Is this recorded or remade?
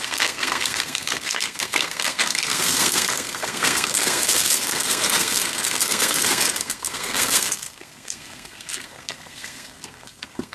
remade